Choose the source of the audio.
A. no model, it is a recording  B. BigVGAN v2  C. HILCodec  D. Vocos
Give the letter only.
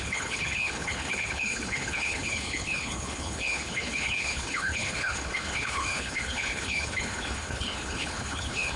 C